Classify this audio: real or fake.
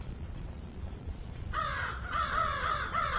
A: fake